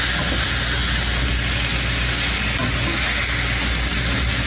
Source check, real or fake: real